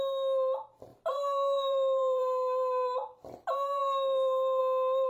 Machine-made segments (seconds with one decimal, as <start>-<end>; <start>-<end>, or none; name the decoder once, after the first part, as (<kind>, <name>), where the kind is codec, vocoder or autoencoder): 0.9-2.2 (vocoder, BigVGAN v2); 3.8-4.6